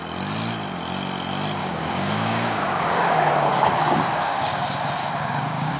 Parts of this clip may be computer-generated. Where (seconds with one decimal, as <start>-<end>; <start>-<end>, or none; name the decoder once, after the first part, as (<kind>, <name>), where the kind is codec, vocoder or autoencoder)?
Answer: 1.6-4.6 (codec, DAC); 5.0-5.8